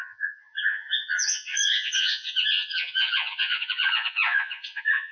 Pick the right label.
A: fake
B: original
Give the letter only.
A